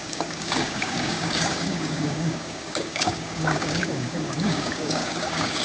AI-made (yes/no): yes